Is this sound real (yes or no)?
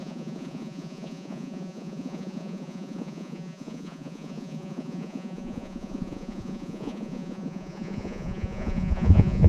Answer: no